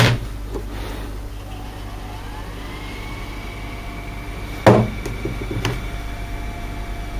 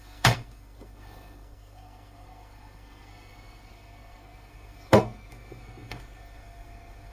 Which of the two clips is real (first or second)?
first